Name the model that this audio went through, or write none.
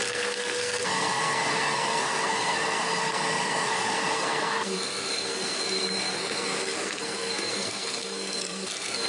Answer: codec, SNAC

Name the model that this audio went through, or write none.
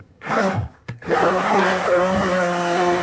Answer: codec, SNAC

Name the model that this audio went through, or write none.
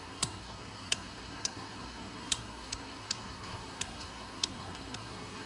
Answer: codec, SNAC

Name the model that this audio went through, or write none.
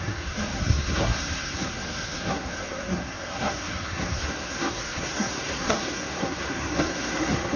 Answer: codec, SNAC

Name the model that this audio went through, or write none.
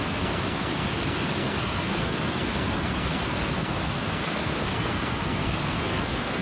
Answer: codec, SNAC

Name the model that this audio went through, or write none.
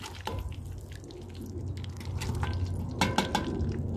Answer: none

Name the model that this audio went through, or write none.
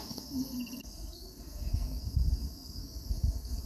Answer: codec, SNAC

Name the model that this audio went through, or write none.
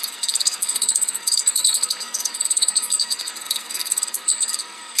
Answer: codec, SNAC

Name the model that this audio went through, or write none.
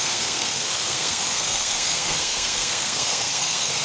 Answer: codec, SNAC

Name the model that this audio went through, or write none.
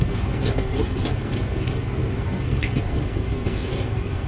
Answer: codec, SNAC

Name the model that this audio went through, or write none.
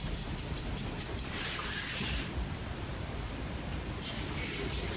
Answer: none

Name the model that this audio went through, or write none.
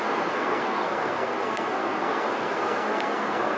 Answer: codec, SNAC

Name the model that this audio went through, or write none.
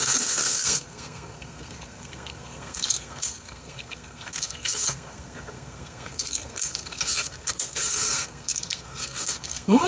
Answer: codec, SNAC